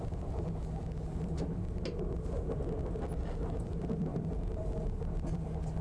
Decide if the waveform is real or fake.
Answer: real